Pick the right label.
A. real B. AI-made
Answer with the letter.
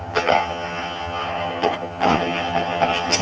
B